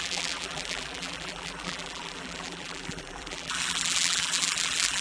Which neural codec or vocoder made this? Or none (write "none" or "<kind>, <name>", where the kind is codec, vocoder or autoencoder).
vocoder, BigVGAN v2